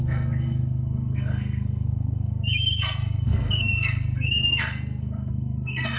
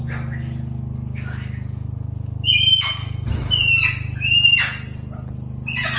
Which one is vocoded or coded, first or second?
first